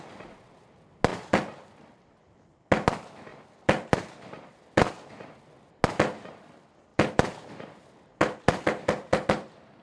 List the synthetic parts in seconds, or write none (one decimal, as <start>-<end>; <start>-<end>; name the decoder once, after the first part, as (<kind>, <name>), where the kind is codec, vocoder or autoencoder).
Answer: 1.1-2.1 (vocoder, BigVGAN v2); 3.3-4.9; 6.9-8.1